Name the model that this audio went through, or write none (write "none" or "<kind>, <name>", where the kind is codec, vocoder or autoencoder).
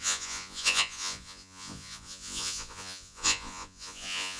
vocoder, Vocos